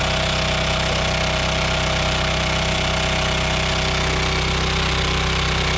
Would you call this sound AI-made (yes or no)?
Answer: no